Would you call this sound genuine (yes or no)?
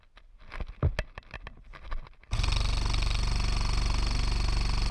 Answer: yes